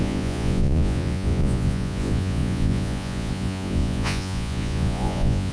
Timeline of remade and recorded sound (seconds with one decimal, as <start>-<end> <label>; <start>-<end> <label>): 0.0-5.5 remade